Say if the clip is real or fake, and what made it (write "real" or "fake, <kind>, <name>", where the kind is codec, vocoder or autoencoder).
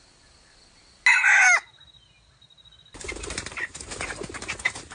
real